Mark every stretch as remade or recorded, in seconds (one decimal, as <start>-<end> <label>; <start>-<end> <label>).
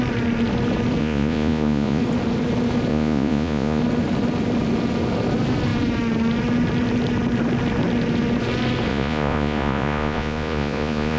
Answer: 0.0-1.0 recorded; 1.0-2.0 remade; 2.0-2.9 recorded; 2.9-3.8 remade; 3.8-8.9 recorded; 8.9-11.2 remade